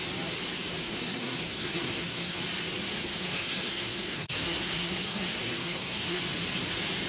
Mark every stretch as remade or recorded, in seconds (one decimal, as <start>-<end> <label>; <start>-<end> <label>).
0.0-0.8 recorded; 0.8-2.4 remade; 2.4-2.9 recorded; 2.9-6.2 remade; 6.2-7.1 recorded